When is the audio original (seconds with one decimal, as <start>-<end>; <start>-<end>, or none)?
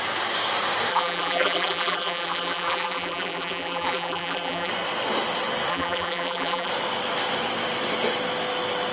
0.0-0.9; 4.7-5.7; 6.7-8.9